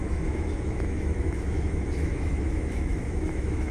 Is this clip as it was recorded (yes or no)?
no